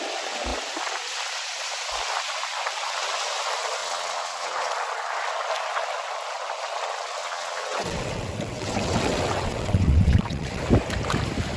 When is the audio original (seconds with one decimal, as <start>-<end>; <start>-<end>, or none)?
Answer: 0.0-3.8; 4.7-7.2; 10.6-11.6